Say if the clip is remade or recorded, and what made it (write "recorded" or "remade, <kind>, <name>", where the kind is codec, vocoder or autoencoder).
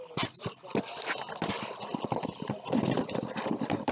recorded